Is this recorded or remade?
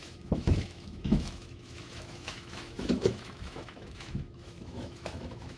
remade